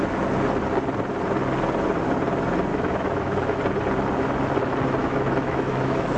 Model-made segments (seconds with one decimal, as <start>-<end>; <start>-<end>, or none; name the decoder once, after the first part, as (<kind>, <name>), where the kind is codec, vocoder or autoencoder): 2.7-3.6 (autoencoder, DAC-VAE); 5.0-6.2